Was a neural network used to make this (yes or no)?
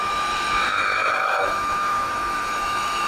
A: yes